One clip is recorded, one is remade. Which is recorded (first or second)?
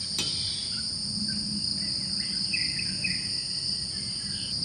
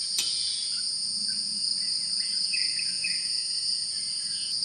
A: first